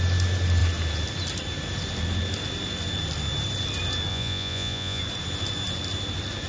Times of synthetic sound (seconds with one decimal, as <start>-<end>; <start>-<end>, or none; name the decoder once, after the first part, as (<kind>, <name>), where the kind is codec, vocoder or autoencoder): 4.1-5.0 (vocoder, Vocos)